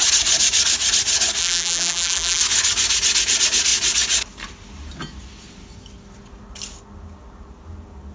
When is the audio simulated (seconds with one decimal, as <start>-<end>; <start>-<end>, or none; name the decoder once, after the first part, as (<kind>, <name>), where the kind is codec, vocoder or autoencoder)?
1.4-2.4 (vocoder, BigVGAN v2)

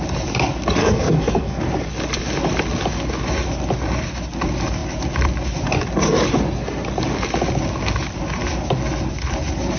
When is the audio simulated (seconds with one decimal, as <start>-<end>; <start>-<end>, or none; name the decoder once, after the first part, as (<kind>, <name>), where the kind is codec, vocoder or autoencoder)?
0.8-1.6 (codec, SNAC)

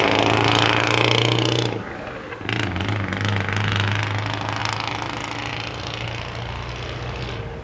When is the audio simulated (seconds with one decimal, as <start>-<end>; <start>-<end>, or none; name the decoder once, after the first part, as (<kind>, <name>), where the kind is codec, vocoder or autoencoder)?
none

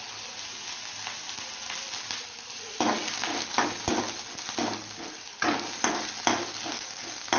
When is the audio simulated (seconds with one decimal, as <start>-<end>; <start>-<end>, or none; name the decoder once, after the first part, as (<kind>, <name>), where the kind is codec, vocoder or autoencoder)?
none